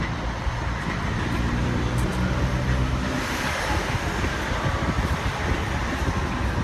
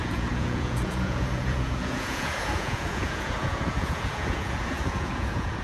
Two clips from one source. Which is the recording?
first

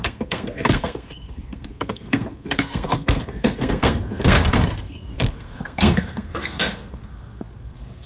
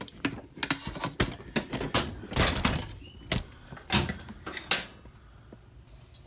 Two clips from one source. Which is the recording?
second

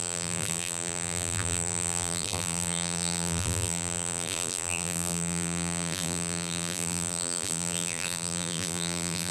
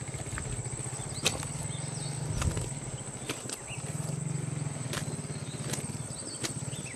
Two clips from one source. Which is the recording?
second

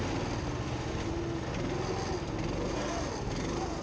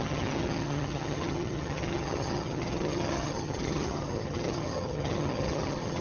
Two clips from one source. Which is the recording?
first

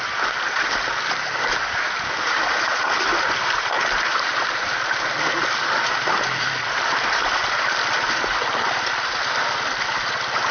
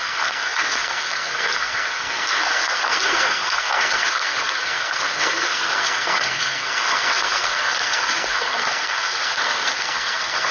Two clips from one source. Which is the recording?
first